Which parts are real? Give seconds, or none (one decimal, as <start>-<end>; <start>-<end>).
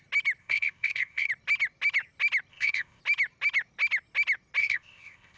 0.0-0.4; 1.3-2.5; 3.0-4.6